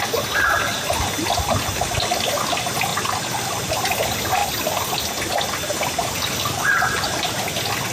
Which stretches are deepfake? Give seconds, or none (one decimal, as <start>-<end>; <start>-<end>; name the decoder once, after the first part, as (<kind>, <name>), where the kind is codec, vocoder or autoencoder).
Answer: 6.0-6.7 (codec, DAC)